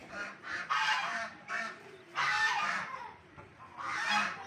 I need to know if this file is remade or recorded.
remade